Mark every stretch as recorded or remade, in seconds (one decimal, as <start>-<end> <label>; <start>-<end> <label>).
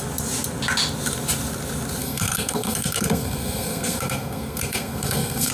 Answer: 0.0-2.0 recorded; 2.0-5.5 remade